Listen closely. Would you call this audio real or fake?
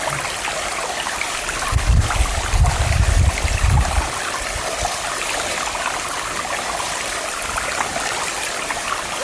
real